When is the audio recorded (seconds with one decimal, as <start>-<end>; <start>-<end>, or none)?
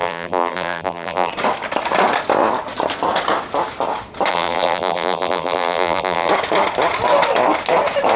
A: 1.3-4.3; 6.3-8.2